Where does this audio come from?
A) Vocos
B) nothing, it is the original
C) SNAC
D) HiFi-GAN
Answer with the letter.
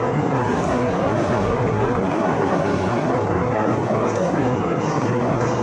C